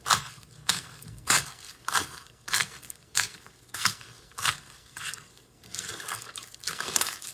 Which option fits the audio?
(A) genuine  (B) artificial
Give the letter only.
B